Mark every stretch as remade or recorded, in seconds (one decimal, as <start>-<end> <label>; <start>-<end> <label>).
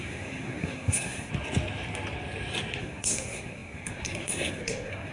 0.0-1.3 remade; 1.3-2.8 recorded; 2.8-5.1 remade